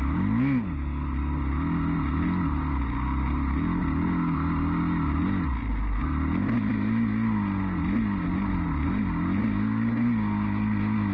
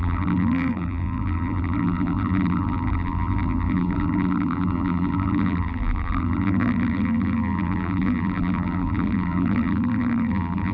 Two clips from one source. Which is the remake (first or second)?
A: second